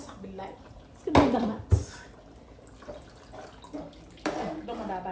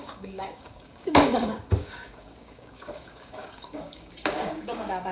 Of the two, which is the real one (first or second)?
first